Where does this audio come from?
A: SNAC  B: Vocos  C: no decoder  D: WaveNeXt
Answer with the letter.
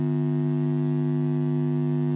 C